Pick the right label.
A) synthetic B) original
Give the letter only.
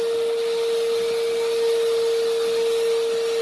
B